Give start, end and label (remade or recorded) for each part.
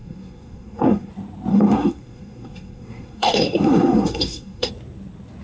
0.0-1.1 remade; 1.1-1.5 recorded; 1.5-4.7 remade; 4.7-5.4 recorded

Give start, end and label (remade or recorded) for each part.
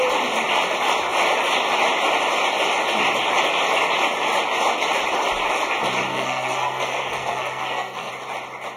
0.0-6.1 recorded; 6.1-8.1 remade; 8.1-8.8 recorded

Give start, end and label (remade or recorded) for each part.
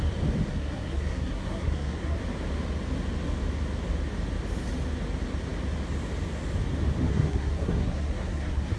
0.0-0.5 recorded; 0.5-2.2 remade; 2.2-7.1 recorded; 7.1-8.8 remade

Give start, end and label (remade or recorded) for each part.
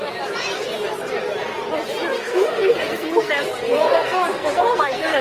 0.0-2.1 recorded; 2.1-3.3 remade; 3.3-3.7 recorded; 3.7-5.2 remade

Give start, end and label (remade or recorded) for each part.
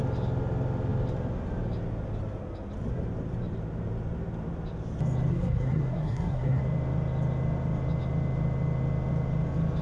0.0-5.3 recorded; 5.3-6.6 remade; 6.6-9.8 recorded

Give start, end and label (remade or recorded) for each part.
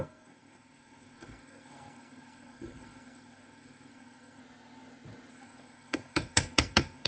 0.0-4.4 remade; 4.4-5.3 recorded; 5.3-7.1 remade